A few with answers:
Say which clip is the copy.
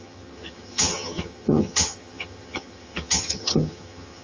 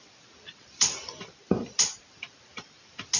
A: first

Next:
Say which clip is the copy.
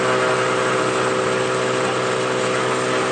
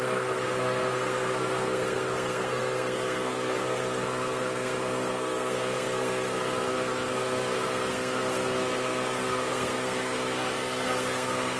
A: second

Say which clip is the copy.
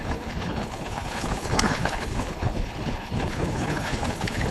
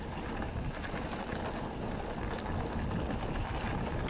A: first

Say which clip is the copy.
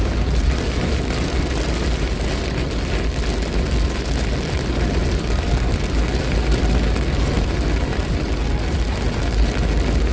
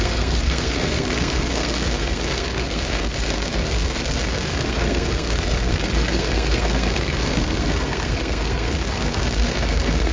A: second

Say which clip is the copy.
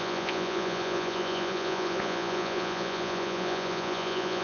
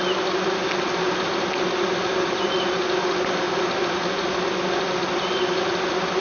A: first